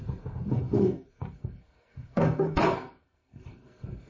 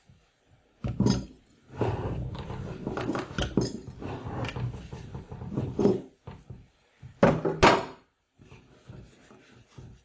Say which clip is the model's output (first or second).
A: first